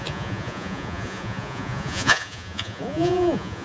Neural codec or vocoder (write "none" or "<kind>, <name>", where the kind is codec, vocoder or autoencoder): vocoder, Vocos